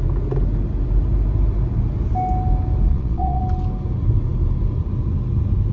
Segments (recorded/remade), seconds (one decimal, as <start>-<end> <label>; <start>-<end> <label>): 0.0-2.9 recorded; 2.9-3.4 remade; 3.4-5.7 recorded